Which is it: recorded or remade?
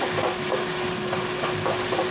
recorded